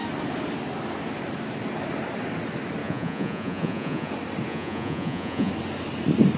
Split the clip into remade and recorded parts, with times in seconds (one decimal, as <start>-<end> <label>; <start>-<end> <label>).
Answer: 0.0-2.8 recorded; 2.8-4.1 remade; 4.1-4.5 recorded; 4.5-5.5 remade; 5.5-6.4 recorded